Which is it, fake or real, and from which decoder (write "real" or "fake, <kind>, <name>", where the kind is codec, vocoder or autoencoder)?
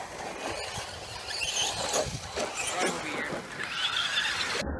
real